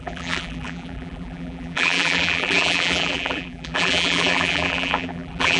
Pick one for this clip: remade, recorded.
remade